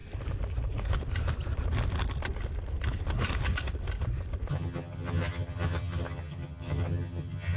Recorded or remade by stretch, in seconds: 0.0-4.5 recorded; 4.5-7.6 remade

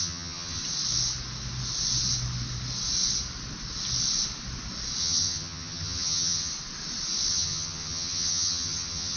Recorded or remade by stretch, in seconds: 0.0-0.6 remade; 0.6-5.0 recorded; 5.0-6.5 remade; 6.5-7.3 recorded; 7.3-9.2 remade

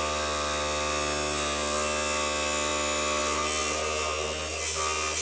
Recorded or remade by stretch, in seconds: 0.0-5.2 recorded

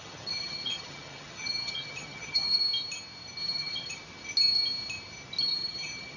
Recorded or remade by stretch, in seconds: 0.0-2.6 remade; 2.6-3.4 recorded; 3.4-4.0 remade; 4.0-5.4 recorded; 5.4-6.2 remade

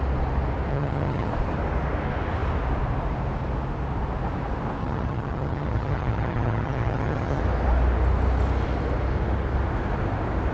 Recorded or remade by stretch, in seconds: 0.0-0.7 recorded; 0.7-1.3 remade; 1.3-4.8 recorded; 4.8-7.4 remade; 7.4-10.5 recorded

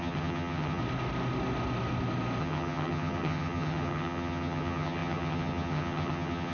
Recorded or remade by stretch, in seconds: 0.0-0.8 remade; 0.8-2.4 recorded; 2.4-6.5 remade